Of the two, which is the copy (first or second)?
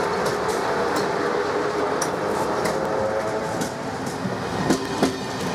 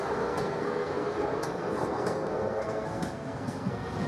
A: second